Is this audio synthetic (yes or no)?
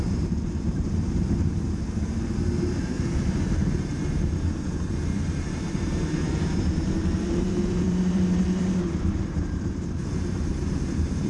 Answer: yes